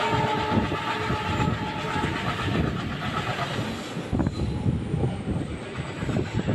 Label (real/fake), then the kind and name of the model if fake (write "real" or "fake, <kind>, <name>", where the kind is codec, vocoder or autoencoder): real